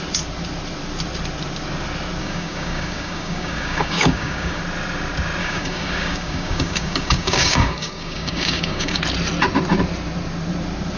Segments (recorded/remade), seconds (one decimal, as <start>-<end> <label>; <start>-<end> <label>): 0.0-2.2 recorded; 2.2-4.6 remade; 4.6-5.4 recorded; 5.4-9.0 remade; 9.0-11.0 recorded

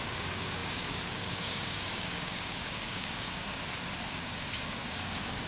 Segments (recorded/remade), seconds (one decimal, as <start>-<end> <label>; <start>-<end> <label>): 0.0-3.6 remade; 3.6-4.1 recorded; 4.1-5.5 remade